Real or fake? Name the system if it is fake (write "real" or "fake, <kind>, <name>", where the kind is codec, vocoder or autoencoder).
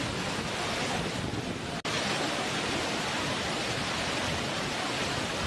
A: real